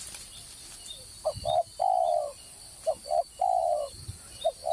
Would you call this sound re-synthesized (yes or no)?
no